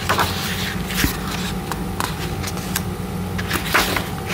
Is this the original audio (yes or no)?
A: yes